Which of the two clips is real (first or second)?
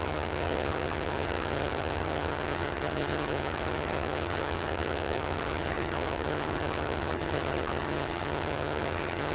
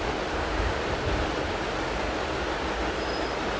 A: second